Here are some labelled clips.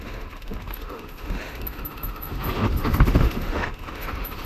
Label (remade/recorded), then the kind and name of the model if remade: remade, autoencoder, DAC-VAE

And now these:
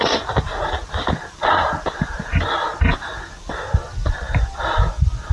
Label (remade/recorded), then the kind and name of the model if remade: recorded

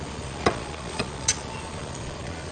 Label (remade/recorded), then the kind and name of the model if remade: remade, vocoder, Vocos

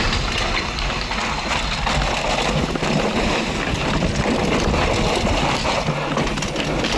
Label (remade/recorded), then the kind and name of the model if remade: recorded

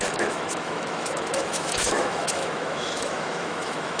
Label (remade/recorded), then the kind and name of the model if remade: remade, autoencoder, DAC-VAE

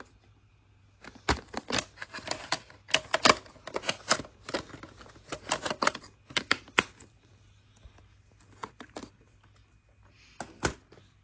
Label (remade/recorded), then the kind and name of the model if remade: recorded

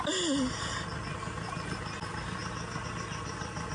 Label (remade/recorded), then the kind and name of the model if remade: recorded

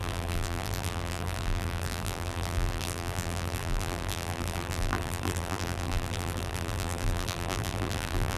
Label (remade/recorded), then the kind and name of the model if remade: remade, vocoder, BigVGAN v2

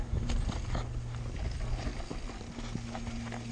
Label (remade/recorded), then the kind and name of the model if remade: recorded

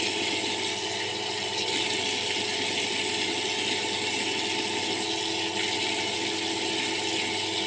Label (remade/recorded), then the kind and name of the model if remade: recorded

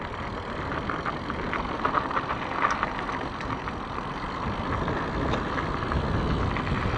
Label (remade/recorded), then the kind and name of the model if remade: recorded